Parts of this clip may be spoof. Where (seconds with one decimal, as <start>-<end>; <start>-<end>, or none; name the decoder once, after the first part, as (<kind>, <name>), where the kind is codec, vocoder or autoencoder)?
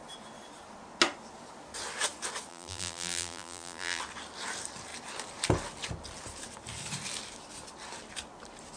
2.5-4.0 (vocoder, BigVGAN v2)